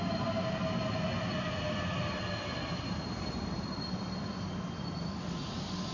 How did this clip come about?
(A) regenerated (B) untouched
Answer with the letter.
B